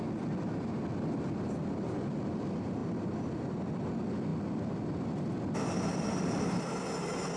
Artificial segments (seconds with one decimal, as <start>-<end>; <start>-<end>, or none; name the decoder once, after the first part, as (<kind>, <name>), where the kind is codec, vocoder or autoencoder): none